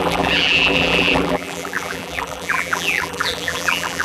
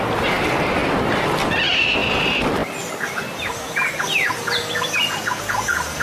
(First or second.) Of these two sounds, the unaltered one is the second